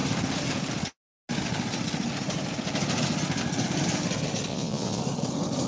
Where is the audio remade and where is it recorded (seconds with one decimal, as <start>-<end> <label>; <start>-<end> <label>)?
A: 0.0-4.5 recorded; 4.5-5.0 remade; 5.0-5.7 recorded